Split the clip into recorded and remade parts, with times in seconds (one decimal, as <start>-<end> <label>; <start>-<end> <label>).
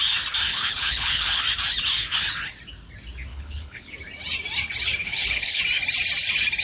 0.0-0.5 recorded; 0.5-1.4 remade; 1.4-3.3 recorded; 3.3-3.9 remade; 3.9-5.0 recorded; 5.0-5.6 remade; 5.6-6.6 recorded